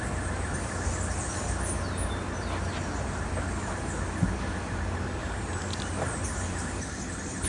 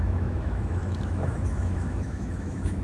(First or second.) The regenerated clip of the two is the second